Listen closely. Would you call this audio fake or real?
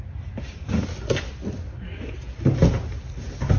real